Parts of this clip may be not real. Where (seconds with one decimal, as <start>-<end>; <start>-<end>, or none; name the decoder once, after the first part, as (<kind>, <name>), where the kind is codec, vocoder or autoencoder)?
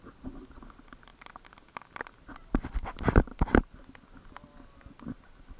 none